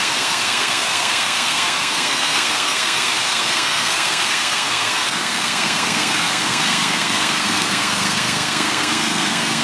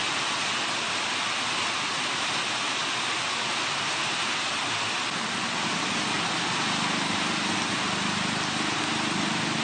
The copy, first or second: first